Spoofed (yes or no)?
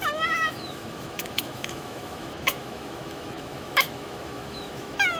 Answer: yes